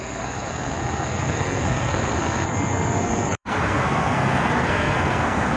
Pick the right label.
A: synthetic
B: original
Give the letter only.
A